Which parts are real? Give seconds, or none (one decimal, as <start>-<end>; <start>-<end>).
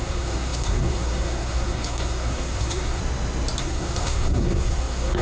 3.0-3.6